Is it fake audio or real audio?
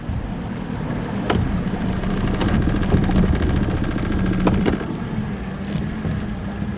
real